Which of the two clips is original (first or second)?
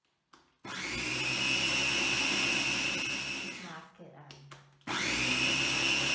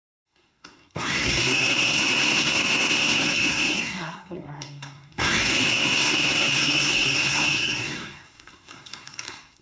first